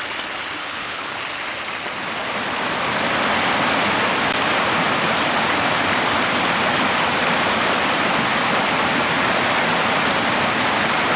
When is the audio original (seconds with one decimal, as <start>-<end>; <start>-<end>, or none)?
0.0-0.6; 1.2-11.2